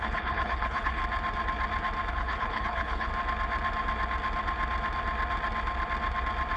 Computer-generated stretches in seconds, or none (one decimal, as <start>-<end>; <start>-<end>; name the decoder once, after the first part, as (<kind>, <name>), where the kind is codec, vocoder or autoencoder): 0.0-1.0 (codec, HILCodec); 2.1-3.1